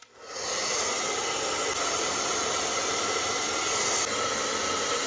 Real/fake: real